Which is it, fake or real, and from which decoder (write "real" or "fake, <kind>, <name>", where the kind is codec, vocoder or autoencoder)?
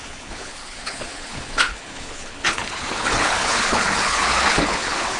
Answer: fake, codec, HILCodec